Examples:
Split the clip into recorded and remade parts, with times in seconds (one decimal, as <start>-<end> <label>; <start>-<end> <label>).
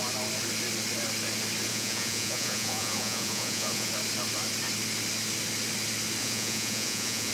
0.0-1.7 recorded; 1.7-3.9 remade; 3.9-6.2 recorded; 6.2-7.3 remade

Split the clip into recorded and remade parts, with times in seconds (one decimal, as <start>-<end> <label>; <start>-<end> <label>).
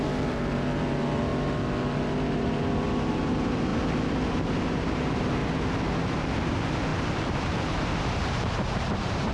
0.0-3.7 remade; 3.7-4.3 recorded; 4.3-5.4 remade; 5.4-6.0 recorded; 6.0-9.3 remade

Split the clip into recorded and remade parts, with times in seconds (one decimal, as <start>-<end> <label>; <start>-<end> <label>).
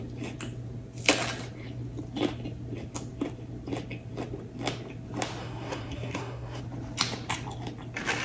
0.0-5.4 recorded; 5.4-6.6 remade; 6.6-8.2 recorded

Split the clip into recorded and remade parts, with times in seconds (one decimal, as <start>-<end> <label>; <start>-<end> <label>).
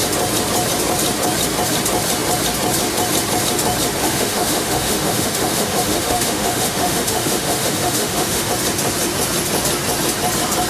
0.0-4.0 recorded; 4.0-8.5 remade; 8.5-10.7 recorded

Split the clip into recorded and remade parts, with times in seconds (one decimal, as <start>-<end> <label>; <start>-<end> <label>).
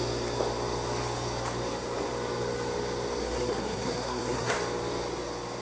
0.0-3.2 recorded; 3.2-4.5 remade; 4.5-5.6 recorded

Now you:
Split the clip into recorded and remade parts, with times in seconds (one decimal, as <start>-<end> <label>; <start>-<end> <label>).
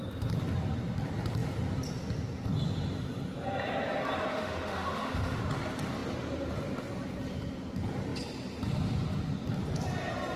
0.0-4.3 recorded; 4.3-5.4 remade; 5.4-10.4 recorded